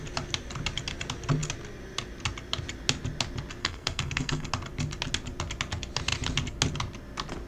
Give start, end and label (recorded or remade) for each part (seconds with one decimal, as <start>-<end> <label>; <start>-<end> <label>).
0.0-3.6 recorded; 3.6-4.5 remade; 4.5-7.5 recorded